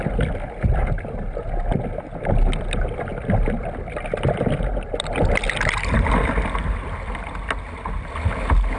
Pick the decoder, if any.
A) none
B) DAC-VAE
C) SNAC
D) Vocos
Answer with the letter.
A